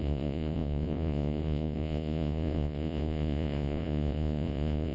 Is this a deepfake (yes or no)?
yes